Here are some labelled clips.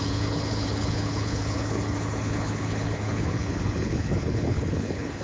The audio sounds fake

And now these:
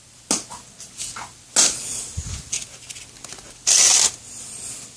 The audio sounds real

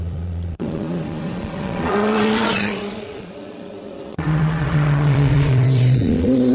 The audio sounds fake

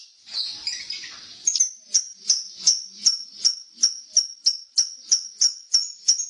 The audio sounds real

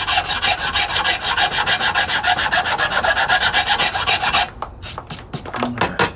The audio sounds real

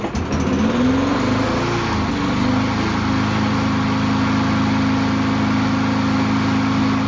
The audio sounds real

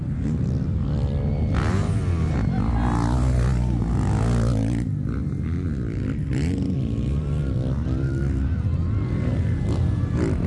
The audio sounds real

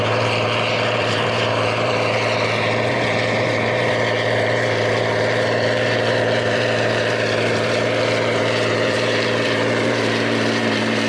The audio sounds fake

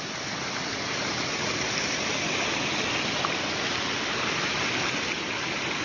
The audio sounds real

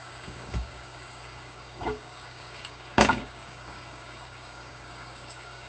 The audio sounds fake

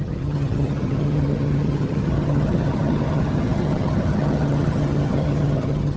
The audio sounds fake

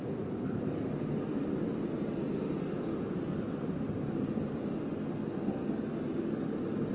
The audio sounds real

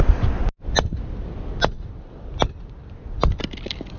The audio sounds real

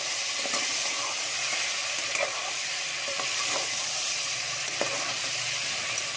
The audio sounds fake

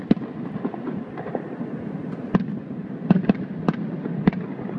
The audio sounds real